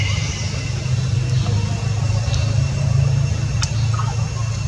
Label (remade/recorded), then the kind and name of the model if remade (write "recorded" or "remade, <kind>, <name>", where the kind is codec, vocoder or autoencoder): recorded